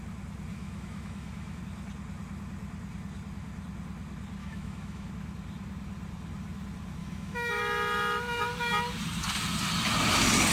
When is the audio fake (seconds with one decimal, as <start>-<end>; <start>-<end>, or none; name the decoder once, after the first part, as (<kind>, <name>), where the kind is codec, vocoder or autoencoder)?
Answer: 0.5-1.6 (autoencoder, DAC-VAE); 4.4-5.1; 7.0-7.6